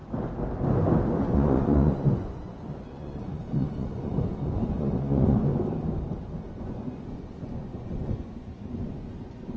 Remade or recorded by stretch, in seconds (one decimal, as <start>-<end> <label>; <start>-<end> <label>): 0.0-1.2 recorded; 1.2-5.5 remade; 5.5-6.6 recorded; 6.6-9.6 remade